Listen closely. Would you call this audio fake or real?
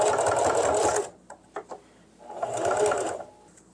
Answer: real